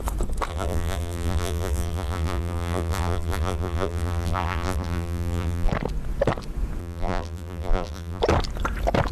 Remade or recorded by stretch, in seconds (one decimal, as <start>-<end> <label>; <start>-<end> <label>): 0.0-0.5 recorded; 0.5-5.7 remade; 5.7-6.8 recorded; 6.8-8.2 remade; 8.2-9.1 recorded